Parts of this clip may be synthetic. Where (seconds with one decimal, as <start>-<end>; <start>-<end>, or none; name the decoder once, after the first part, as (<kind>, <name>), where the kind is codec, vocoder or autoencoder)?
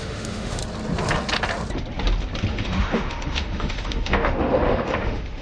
0.0-0.6 (autoencoder, DAC-VAE); 2.5-5.4